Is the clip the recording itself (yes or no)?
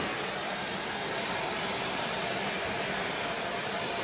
yes